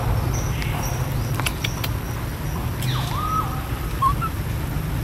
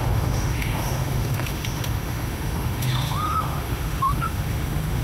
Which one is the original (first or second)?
first